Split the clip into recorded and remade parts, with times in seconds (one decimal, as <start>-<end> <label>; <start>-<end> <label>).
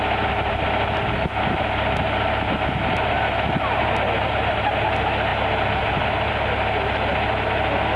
0.0-8.0 recorded